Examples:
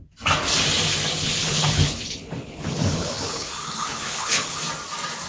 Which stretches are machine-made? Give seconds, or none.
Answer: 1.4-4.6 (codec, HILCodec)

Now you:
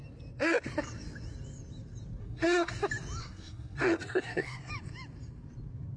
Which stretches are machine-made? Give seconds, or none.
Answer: 2.2-2.7 (codec, SNAC); 3.2-4.7

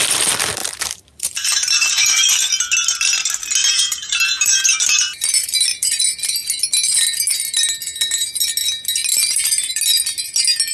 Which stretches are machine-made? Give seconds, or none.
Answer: 0.6-2.3 (vocoder, BigVGAN v2); 3.6-6.0; 9.1-9.7

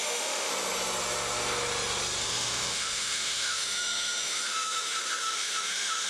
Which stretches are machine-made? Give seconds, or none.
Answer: 0.0-0.5 (autoencoder, DAC-VAE); 2.2-6.1

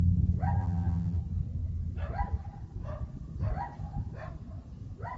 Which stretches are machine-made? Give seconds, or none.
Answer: 0.6-1.2 (vocoder, BigVGAN v2)